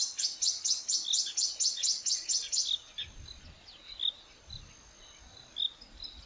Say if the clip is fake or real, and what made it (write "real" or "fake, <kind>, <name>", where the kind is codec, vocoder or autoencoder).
real